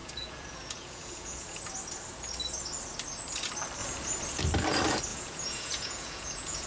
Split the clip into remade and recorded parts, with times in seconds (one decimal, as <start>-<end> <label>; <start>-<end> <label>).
0.0-1.6 remade; 1.6-5.1 recorded; 5.1-6.7 remade